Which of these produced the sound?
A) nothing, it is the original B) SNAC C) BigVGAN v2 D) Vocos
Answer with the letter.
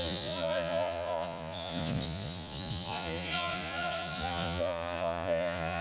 D